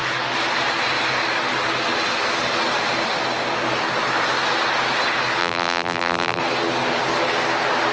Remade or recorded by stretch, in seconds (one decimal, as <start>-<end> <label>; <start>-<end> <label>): 0.0-5.4 recorded; 5.4-6.4 remade; 6.4-7.9 recorded